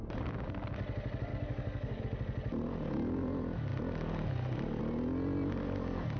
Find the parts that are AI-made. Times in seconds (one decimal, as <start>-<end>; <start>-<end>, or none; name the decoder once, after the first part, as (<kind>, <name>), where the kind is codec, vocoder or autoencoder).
1.3-2.0 (codec, DAC)